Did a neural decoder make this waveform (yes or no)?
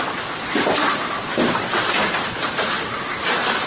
yes